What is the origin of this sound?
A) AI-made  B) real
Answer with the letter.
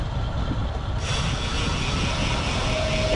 B